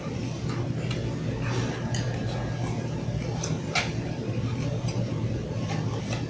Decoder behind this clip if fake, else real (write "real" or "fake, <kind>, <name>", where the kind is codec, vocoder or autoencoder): real